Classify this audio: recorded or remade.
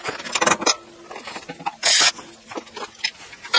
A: recorded